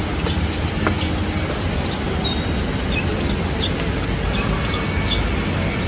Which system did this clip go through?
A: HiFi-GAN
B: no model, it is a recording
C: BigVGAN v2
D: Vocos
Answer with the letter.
B